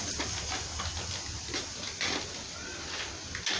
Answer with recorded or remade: recorded